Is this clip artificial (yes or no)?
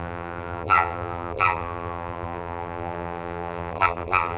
yes